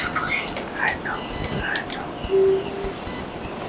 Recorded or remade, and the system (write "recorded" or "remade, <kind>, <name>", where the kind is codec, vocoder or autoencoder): recorded